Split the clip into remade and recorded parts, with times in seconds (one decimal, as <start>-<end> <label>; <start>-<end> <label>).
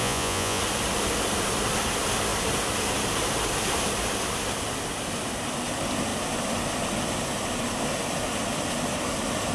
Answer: 0.0-0.6 remade; 0.6-9.5 recorded